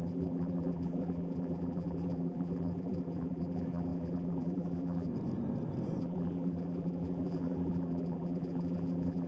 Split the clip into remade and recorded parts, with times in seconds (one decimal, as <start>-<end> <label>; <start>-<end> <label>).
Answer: 0.0-5.1 remade; 5.1-6.0 recorded; 6.0-9.3 remade